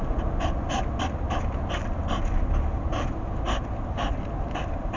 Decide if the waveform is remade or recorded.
recorded